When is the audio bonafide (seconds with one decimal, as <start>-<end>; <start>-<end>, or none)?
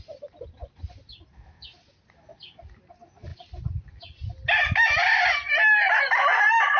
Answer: 0.0-6.8